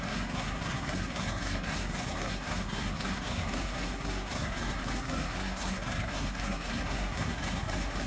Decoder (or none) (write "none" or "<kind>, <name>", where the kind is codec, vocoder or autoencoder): codec, SNAC